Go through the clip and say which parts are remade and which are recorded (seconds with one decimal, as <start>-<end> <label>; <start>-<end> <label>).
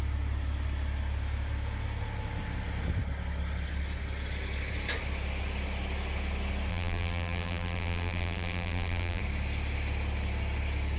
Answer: 0.0-6.7 recorded; 6.7-9.2 remade; 9.2-11.0 recorded